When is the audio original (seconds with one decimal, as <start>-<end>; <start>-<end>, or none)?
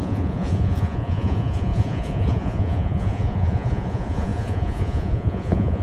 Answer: none